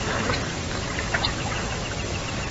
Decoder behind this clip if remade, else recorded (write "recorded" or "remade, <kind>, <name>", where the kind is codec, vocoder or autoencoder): recorded